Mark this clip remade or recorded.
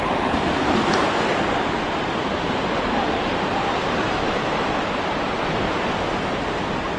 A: recorded